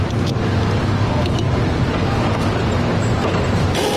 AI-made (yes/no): no